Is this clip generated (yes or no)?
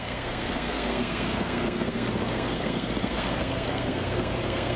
yes